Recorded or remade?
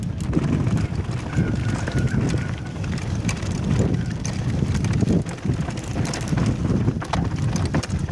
recorded